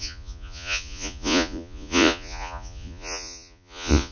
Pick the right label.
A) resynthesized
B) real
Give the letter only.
A